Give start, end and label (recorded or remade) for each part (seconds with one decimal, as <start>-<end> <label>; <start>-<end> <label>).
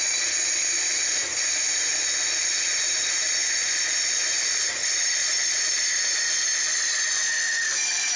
0.0-8.2 recorded